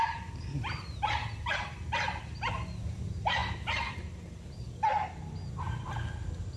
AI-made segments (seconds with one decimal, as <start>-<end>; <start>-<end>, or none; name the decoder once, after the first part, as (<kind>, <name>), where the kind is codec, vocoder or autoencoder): none